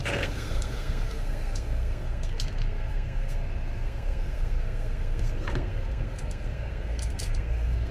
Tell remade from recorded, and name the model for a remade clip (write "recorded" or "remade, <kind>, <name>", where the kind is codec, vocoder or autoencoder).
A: remade, codec, SNAC